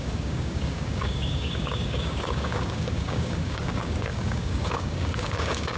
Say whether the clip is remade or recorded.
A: remade